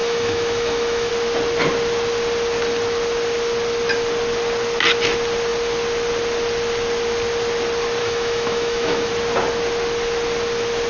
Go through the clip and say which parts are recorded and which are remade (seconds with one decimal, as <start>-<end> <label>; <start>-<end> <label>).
0.0-1.1 remade; 1.1-8.0 recorded; 8.0-9.1 remade; 9.1-10.9 recorded